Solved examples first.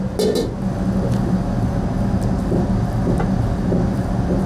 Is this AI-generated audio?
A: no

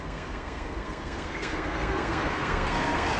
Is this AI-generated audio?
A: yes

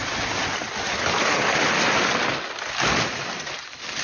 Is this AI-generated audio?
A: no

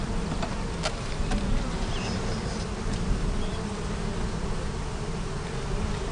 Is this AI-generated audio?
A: no